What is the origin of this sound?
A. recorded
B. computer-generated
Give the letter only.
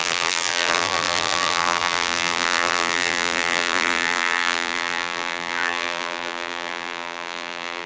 B